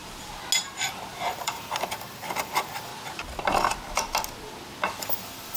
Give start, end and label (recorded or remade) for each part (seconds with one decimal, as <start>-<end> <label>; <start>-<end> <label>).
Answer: 0.0-1.3 recorded; 1.3-2.9 remade; 2.9-5.0 recorded; 5.0-5.6 remade